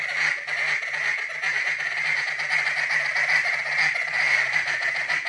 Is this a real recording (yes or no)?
yes